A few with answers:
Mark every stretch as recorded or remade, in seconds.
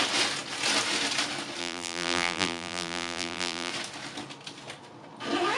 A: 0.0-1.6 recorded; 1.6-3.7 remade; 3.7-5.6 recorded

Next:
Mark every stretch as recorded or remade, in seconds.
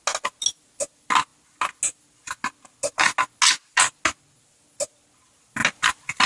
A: 0.0-6.3 recorded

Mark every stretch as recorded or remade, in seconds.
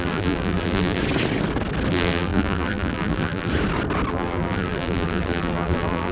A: 0.0-1.0 remade; 1.0-1.9 recorded; 1.9-3.5 remade; 3.5-4.1 recorded; 4.1-6.1 remade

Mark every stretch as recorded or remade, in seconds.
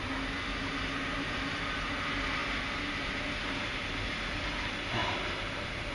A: 0.0-5.0 recorded; 5.0-5.9 remade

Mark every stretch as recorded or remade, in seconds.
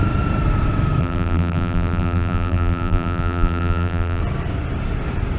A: 0.0-1.0 recorded; 1.0-4.2 remade; 4.2-5.4 recorded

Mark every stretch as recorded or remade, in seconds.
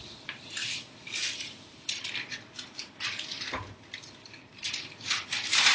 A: 0.0-5.7 remade